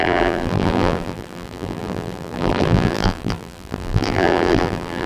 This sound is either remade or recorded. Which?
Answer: remade